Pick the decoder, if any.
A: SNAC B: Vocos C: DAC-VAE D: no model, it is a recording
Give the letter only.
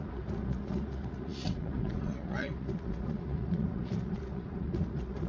B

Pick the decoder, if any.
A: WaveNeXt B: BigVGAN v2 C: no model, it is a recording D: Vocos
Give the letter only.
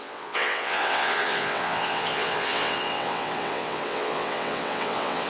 A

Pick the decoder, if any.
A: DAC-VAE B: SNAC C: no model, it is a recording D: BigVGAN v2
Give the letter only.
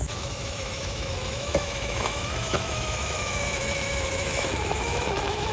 A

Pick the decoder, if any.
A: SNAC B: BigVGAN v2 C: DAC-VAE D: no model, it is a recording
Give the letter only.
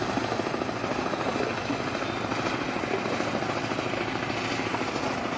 D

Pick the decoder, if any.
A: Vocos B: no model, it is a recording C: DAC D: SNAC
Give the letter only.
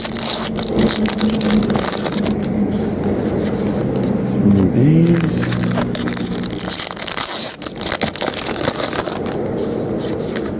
B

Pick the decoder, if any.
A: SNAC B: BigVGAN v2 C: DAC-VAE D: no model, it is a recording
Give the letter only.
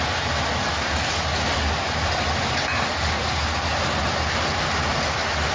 D